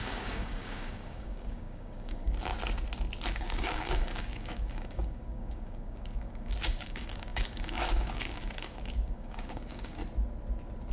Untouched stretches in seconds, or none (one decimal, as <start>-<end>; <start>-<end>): 2.5-3.3; 10.0-10.9

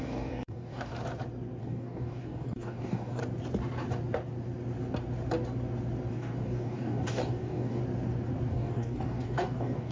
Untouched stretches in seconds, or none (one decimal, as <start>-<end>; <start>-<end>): 0.9-1.6; 3.2-6.1; 7.8-8.5

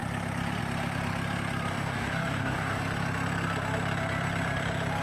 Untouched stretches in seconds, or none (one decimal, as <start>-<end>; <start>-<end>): 0.0-1.7; 2.8-5.0

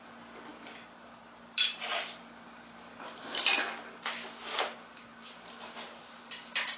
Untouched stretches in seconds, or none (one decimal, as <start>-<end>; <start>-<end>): 0.0-6.8

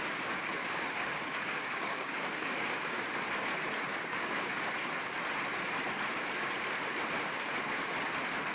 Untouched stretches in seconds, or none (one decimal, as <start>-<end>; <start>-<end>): 0.0-0.6; 3.0-3.9; 4.6-8.5